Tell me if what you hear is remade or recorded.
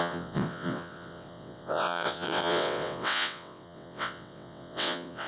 remade